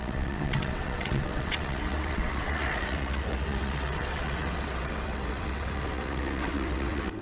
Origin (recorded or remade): remade